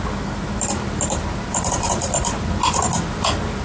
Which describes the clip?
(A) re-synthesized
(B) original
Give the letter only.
B